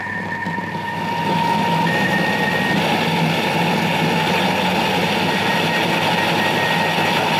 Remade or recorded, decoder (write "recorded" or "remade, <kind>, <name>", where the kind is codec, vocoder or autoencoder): recorded